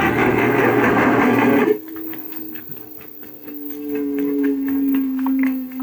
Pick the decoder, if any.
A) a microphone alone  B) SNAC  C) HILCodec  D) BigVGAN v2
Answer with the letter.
B